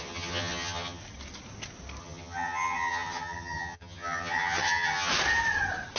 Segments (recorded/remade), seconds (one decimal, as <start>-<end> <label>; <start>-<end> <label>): 0.0-1.0 remade; 1.0-2.0 recorded; 2.0-5.1 remade; 5.1-6.0 recorded